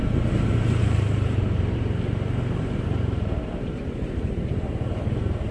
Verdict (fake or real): fake